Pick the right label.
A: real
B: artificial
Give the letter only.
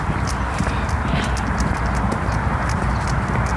A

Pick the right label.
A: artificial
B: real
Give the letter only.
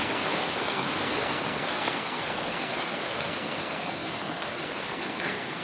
A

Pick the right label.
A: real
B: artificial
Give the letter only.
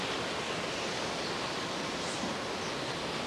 A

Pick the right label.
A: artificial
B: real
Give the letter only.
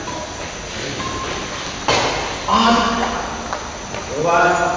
B